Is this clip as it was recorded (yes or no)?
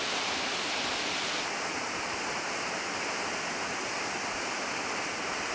yes